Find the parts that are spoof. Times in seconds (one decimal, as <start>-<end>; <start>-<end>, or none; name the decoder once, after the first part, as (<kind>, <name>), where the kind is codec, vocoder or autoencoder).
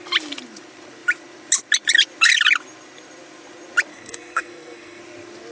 3.9-5.0 (codec, SNAC)